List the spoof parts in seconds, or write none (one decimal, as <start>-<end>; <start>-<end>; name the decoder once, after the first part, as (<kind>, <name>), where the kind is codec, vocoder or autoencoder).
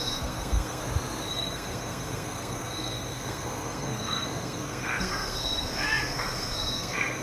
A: 0.0-0.8 (codec, SNAC); 1.3-7.2